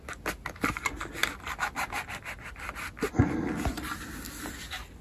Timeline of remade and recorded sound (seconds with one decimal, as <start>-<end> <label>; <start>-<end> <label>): 0.0-5.0 recorded